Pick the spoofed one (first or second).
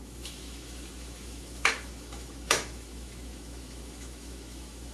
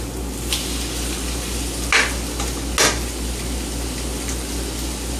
first